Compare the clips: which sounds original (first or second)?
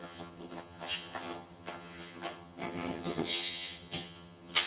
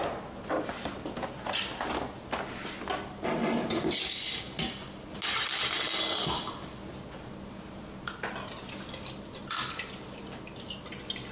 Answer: second